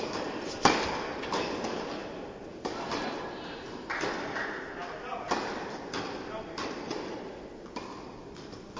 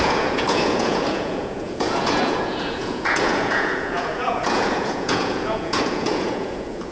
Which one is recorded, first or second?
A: first